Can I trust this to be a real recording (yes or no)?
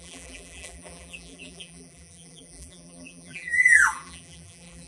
no